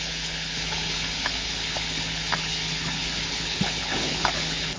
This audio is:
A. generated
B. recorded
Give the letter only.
A